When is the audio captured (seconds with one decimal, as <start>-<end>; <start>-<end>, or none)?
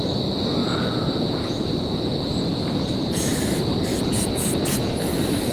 0.0-0.6; 2.0-3.9; 4.9-5.5